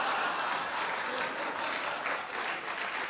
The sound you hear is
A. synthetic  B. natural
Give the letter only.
B